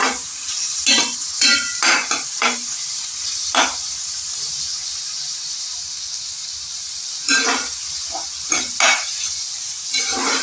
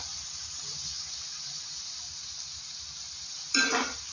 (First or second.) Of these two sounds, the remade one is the first